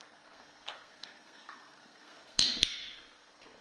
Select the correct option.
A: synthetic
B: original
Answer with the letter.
A